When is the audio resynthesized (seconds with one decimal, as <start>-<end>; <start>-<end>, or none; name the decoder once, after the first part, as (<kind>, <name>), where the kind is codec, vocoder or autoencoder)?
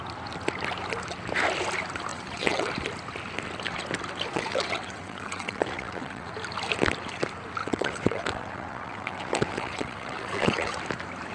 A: 2.1-2.7 (vocoder, WaveNeXt); 4.3-6.3; 7.6-10.8